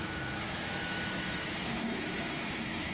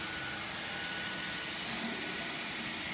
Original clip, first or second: second